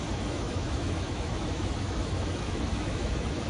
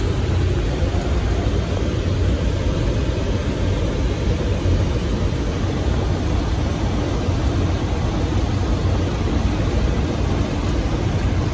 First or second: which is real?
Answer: second